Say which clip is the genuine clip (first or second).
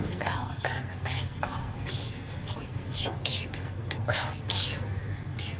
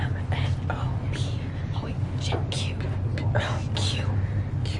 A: second